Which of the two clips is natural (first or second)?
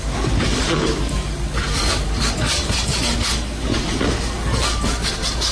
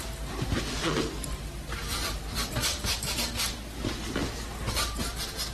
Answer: second